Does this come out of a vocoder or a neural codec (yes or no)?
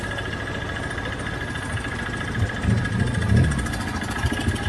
no